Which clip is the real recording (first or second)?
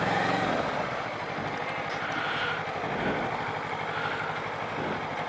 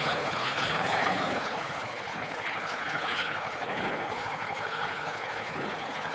first